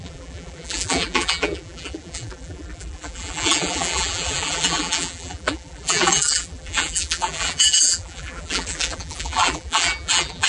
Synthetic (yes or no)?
yes